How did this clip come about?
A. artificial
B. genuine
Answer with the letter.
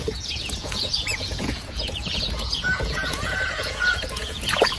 A